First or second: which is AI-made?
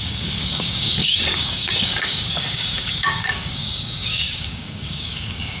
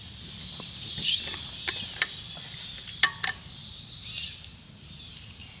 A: first